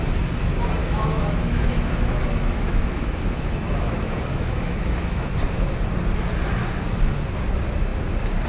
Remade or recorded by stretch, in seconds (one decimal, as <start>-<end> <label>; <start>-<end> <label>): 0.0-0.8 recorded; 0.8-5.7 remade; 5.7-8.5 recorded